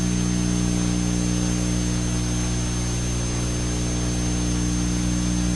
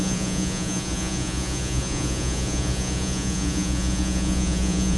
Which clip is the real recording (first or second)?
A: first